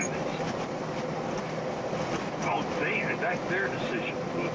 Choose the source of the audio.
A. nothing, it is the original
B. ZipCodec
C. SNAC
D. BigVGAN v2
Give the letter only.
A